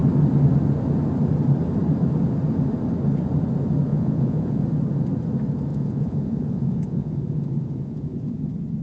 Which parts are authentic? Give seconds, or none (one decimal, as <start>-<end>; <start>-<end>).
0.0-3.9; 4.6-5.7; 8.4-8.8